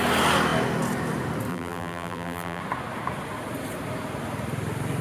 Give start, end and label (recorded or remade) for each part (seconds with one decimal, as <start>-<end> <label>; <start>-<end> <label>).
0.0-1.5 recorded; 1.5-2.6 remade; 2.6-5.0 recorded